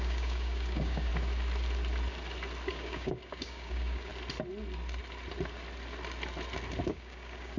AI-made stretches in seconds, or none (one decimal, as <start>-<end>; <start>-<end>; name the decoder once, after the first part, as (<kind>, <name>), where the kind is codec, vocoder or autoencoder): 0.0-1.1 (codec, DAC); 2.7-4.1; 6.9-7.6